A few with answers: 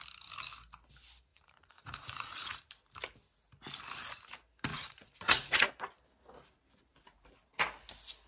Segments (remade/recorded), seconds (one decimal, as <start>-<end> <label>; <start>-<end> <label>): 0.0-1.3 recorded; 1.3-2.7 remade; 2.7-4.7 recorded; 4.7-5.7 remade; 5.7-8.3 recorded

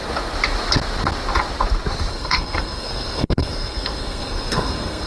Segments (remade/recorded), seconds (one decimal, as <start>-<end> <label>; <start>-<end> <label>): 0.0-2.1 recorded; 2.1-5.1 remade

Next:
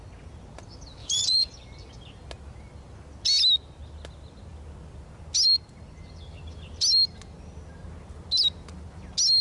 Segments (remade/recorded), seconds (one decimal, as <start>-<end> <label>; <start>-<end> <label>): 0.0-1.0 recorded; 1.0-1.5 remade; 1.5-9.4 recorded

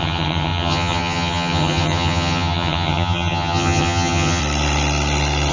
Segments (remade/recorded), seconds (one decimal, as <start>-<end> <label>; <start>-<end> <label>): 0.0-4.4 remade; 4.4-5.5 recorded